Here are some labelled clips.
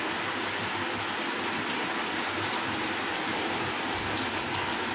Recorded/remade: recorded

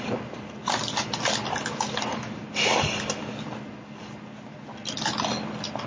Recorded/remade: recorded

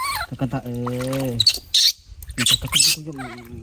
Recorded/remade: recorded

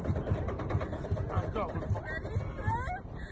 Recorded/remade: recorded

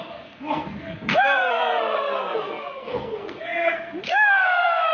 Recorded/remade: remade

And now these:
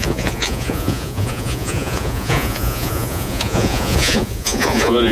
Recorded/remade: remade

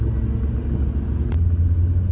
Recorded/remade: recorded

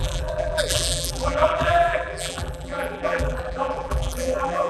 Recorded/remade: remade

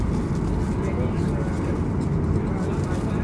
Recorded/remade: recorded